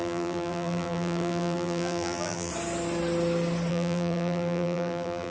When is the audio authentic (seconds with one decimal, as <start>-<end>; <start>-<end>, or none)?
2.5-3.7